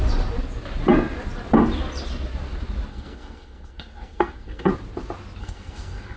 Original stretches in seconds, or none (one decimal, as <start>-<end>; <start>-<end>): 0.0-2.9; 4.7-5.4